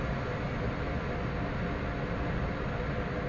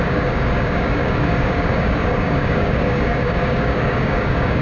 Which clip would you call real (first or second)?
first